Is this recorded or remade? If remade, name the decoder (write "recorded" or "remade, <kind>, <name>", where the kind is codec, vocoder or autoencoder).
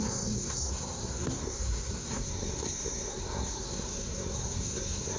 remade, codec, SNAC